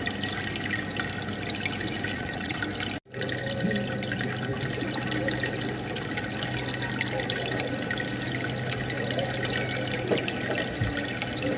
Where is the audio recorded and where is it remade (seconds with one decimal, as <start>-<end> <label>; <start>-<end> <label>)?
0.0-2.1 recorded; 2.1-2.6 remade; 2.6-11.6 recorded